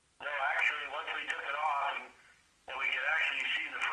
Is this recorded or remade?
remade